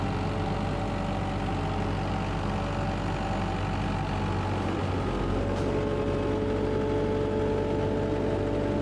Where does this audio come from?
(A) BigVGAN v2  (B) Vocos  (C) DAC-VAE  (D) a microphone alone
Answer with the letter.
D